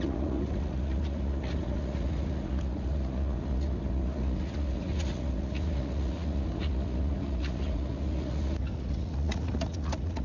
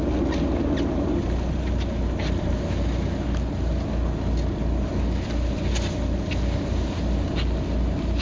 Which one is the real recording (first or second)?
second